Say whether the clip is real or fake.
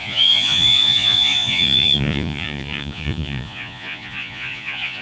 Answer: fake